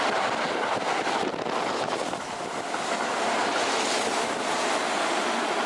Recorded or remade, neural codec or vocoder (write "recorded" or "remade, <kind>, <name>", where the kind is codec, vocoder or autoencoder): recorded